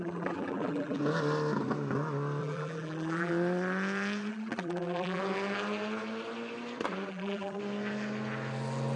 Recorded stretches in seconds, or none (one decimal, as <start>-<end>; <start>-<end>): 1.0-2.4; 3.3-4.3; 5.2-7.1; 7.6-9.0